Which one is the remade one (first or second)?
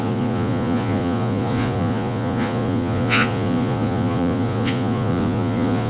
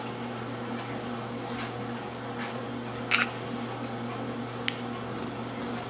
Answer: first